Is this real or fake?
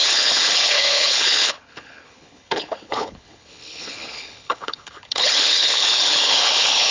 fake